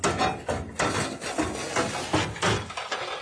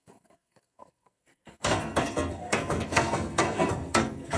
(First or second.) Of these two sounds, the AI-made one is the second